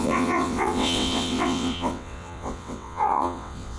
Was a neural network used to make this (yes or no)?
yes